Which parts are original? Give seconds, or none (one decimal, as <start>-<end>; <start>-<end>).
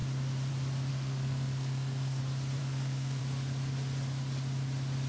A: 0.0-0.9; 2.2-2.6; 3.2-5.1